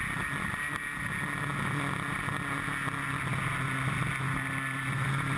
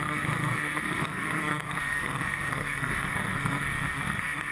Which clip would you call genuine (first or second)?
first